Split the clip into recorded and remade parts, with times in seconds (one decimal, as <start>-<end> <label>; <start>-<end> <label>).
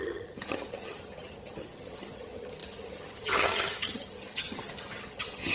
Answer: 0.0-5.5 remade